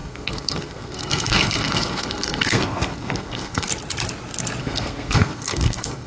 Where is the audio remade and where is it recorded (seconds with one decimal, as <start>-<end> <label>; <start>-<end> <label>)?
0.0-3.7 remade; 3.7-4.6 recorded; 4.6-6.1 remade